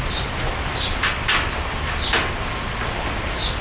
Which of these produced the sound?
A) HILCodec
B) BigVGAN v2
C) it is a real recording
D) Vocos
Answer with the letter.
C